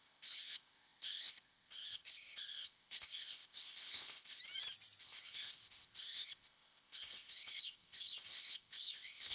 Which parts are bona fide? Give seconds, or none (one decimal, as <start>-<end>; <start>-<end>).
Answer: 4.4-5.0